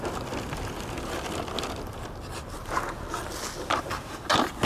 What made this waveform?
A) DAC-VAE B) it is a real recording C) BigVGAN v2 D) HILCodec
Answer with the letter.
B